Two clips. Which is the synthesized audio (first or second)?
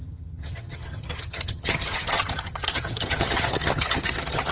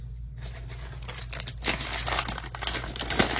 first